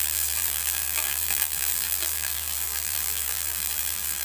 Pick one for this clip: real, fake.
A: fake